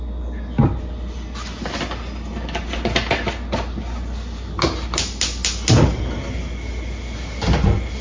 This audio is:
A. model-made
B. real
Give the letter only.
B